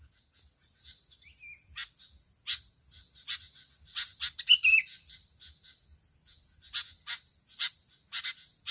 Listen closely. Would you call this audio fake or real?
real